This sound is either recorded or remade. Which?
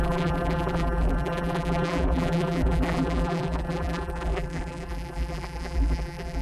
remade